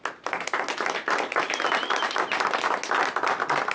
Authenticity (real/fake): real